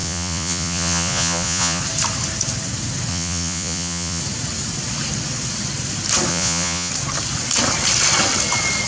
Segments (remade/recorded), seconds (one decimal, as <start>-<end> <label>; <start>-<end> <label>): 0.0-1.8 remade; 1.8-3.1 recorded; 3.1-4.2 remade; 4.2-6.3 recorded; 6.3-6.9 remade; 6.9-8.9 recorded